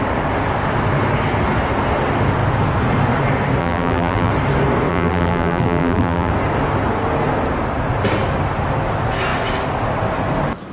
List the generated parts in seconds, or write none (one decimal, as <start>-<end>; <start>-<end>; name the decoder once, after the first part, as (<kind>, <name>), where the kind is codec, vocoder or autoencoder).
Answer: 3.6-4.3 (vocoder, BigVGAN v2); 4.9-6.3